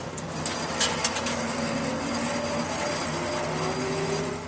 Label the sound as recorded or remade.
recorded